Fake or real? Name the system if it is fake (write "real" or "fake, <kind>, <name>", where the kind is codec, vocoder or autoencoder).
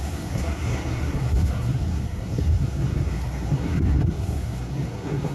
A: fake, codec, SNAC